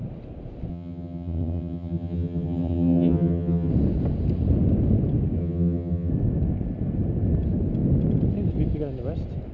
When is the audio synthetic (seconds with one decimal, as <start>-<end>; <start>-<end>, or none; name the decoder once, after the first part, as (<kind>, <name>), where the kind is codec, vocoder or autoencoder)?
0.7-3.7 (vocoder, HiFi-GAN); 5.4-6.1